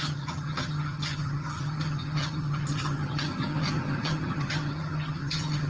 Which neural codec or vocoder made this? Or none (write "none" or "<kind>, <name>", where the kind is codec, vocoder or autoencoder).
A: vocoder, HiFi-GAN